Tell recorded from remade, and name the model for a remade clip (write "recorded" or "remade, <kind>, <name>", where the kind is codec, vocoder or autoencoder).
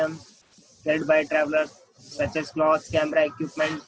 recorded